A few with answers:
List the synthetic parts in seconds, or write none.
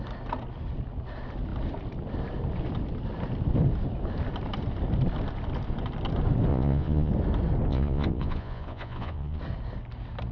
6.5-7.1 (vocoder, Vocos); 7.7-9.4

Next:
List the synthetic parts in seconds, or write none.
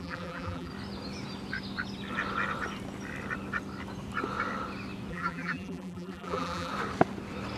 0.0-0.7 (vocoder, BigVGAN v2); 5.1-6.7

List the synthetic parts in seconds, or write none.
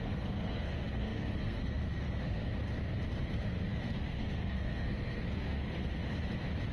0.0-2.5 (codec, SNAC); 3.2-6.0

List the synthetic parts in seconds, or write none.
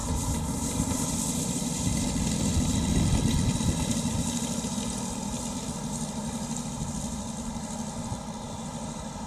0.6-9.3 (vocoder, BigVGAN v2)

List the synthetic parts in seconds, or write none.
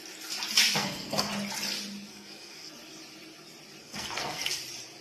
0.6-1.3 (codec, SNAC); 2.1-2.7; 3.8-4.6